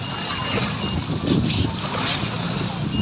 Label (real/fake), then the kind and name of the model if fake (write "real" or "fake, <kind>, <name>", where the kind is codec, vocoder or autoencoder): real